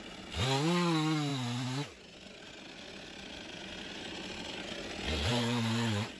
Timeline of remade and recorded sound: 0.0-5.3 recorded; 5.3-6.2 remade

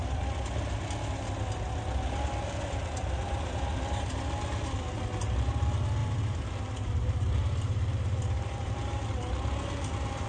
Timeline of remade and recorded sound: 0.0-6.0 recorded; 6.0-9.1 remade; 9.1-10.3 recorded

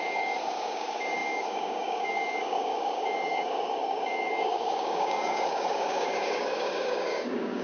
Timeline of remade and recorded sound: 0.0-7.6 remade

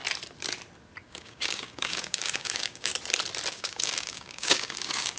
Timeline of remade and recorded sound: 0.0-1.0 recorded; 1.0-2.9 remade; 2.9-3.5 recorded; 3.5-5.2 remade

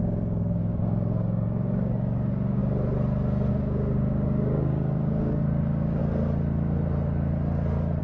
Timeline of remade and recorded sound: 0.0-2.6 remade; 2.6-3.5 recorded; 3.5-6.0 remade; 6.0-8.0 recorded

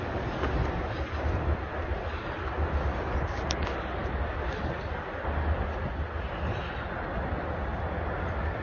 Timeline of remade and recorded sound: 0.0-8.6 recorded